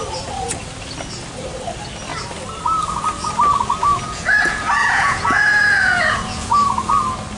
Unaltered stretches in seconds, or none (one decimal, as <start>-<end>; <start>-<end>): 0.0-3.9; 6.5-7.4